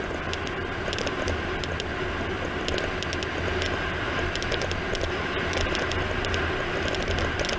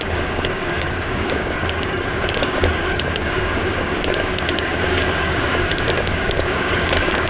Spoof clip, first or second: second